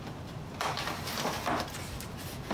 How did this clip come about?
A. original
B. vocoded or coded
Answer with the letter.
A